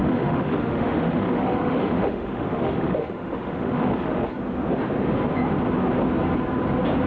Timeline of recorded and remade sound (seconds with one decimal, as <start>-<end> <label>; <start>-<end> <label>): 0.0-4.3 remade; 4.3-7.1 recorded